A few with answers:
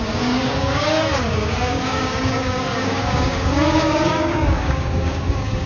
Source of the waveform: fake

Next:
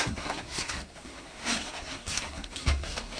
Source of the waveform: fake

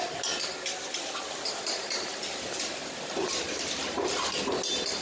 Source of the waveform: real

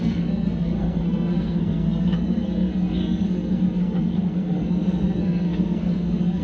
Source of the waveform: fake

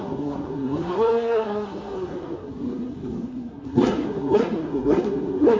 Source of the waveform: fake